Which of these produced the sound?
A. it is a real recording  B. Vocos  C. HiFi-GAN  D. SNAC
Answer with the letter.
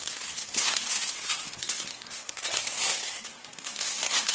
D